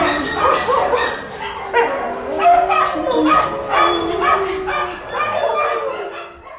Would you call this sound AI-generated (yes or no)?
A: no